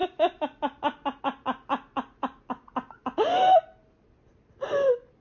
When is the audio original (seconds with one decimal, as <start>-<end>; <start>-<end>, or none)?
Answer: 0.0-5.2